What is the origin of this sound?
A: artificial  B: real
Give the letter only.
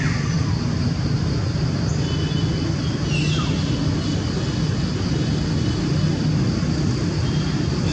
B